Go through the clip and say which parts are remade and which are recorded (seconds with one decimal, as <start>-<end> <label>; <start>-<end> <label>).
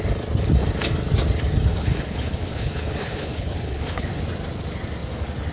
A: 0.0-1.7 recorded; 1.7-4.2 remade; 4.2-5.5 recorded